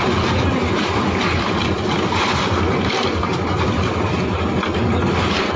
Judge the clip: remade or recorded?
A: recorded